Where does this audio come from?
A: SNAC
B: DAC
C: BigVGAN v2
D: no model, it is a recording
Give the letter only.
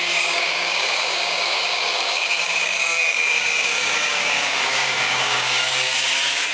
B